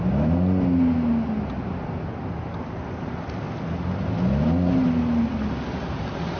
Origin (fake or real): real